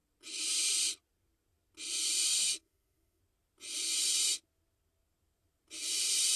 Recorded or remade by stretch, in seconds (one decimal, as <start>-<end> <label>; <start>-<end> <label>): 0.0-2.3 recorded; 2.3-3.2 remade; 3.2-6.4 recorded